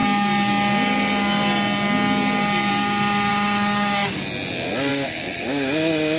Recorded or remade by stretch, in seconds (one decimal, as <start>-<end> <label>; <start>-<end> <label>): 0.0-3.3 recorded; 3.3-4.2 remade; 4.2-4.9 recorded; 4.9-5.7 remade; 5.7-6.2 recorded